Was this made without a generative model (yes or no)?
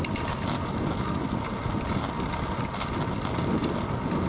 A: yes